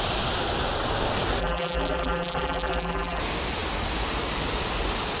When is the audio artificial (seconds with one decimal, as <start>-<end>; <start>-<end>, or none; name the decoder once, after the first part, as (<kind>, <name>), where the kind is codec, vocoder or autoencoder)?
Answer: 1.4-3.2 (vocoder, BigVGAN v2)